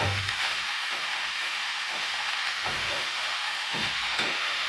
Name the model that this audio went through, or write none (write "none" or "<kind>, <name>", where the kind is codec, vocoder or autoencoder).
autoencoder, DAC-VAE